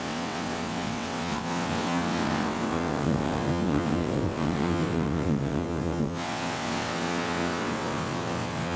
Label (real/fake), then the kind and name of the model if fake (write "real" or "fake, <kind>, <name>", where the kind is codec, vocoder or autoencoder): fake, vocoder, WaveNeXt